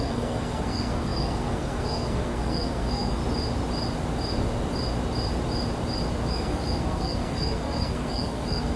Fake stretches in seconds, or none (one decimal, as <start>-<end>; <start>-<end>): 0.0-3.2; 6.3-8.8